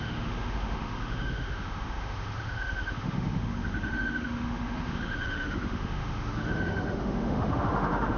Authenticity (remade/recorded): remade